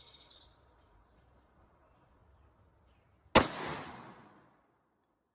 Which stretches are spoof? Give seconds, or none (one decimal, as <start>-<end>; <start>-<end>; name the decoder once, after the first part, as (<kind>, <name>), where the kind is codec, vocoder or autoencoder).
0.0-2.2 (vocoder, Vocos); 3.9-5.3